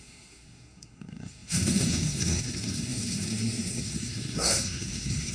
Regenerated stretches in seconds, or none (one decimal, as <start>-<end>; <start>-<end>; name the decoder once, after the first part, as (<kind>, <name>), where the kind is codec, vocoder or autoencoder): 0.0-5.3 (codec, SNAC)